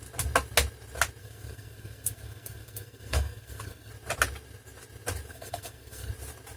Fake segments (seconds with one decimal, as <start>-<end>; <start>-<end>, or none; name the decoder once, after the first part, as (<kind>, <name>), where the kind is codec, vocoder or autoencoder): 1.2-3.9 (codec, SNAC); 5.3-6.1